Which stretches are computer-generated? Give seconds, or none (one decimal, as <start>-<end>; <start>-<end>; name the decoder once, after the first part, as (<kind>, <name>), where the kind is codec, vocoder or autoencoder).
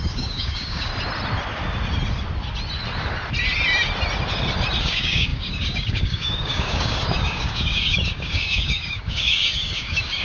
0.0-0.9 (codec, DAC); 4.8-10.2